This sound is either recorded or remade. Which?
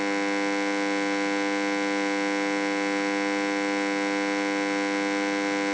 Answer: recorded